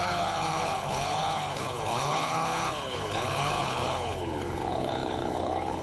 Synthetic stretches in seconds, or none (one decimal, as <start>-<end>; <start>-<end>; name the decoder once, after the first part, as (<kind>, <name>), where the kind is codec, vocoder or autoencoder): 0.0-5.8 (codec, HILCodec)